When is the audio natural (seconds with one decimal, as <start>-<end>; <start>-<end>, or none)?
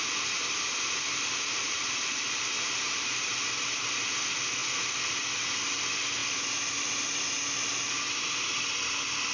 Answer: 0.0-1.5; 4.0-9.3